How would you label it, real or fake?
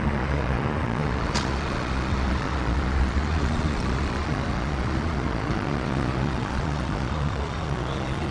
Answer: fake